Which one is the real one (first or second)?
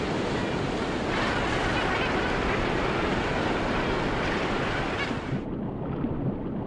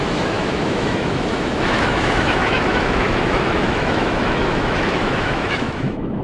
first